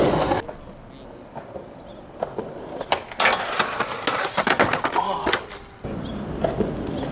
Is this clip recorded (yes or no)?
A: yes